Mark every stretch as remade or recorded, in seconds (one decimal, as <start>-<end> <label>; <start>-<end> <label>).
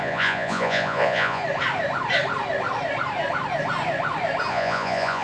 0.0-1.4 remade; 1.4-4.5 recorded; 4.5-5.2 remade